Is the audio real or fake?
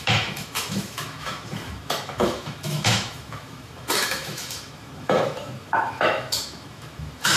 fake